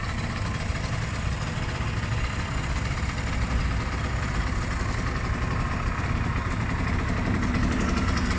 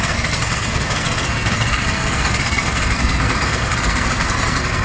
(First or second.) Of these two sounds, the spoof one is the second